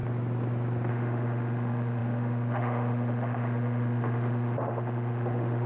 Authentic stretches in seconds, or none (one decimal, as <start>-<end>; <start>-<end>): 0.0-0.9